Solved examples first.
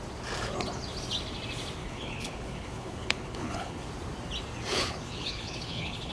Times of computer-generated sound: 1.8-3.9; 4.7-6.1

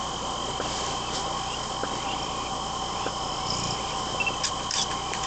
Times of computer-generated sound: none